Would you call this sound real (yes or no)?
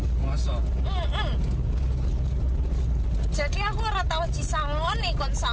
yes